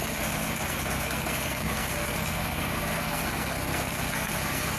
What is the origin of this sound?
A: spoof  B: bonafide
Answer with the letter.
A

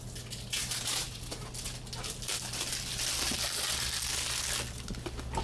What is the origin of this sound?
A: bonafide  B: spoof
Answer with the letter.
A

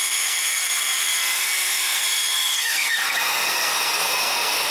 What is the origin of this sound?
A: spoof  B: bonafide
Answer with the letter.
A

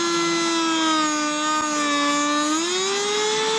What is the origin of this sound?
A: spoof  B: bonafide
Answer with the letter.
B